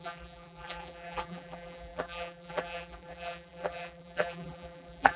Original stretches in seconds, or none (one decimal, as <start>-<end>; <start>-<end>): none